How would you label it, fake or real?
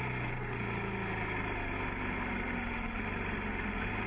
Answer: real